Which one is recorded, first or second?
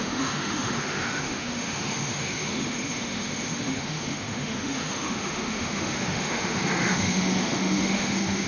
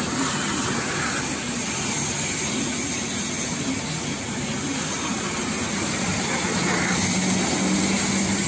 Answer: second